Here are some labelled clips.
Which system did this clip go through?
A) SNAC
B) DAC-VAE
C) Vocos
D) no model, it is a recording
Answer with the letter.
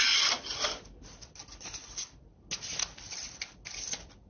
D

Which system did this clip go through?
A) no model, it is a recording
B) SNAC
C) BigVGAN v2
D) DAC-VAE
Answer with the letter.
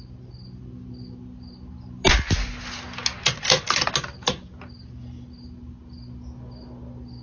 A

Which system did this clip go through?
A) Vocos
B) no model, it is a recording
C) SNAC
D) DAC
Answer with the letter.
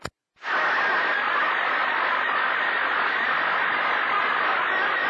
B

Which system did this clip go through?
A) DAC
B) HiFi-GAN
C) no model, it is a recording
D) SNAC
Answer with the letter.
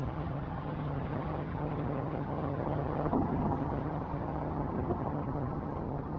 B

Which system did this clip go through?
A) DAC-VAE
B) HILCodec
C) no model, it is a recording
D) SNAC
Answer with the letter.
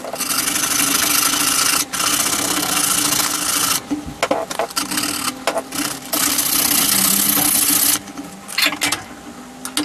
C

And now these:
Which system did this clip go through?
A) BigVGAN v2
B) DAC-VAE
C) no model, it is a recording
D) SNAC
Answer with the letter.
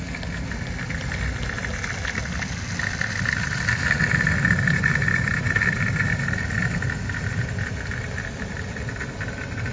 C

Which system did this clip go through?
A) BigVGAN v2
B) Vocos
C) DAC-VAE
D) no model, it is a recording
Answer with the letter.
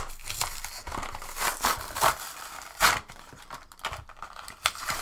D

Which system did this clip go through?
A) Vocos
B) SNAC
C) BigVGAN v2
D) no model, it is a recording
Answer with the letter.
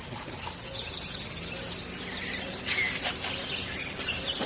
D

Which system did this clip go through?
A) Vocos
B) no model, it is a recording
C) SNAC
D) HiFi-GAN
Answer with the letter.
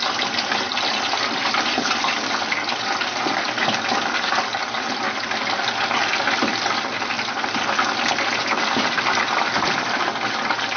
B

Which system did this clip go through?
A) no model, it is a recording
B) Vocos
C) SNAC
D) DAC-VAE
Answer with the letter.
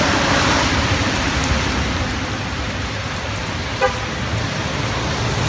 A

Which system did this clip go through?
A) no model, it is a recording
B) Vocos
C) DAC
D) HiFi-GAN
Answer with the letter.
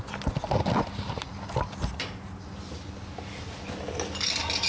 A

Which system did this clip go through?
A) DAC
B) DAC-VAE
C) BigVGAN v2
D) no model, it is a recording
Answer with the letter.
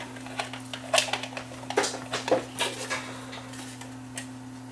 D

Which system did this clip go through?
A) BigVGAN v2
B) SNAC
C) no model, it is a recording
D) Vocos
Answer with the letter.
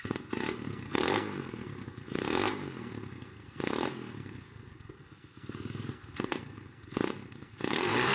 B